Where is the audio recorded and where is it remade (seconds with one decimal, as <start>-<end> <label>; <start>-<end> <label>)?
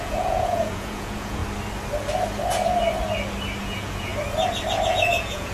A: 0.0-1.4 remade; 1.4-3.6 recorded; 3.6-4.1 remade; 4.1-4.9 recorded; 4.9-5.5 remade